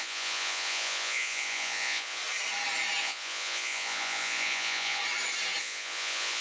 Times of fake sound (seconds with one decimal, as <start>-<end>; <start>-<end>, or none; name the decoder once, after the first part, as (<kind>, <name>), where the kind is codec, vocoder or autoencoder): 0.0-2.2 (vocoder, Vocos); 3.0-5.0; 5.6-6.4